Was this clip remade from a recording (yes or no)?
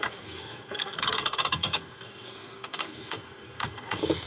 yes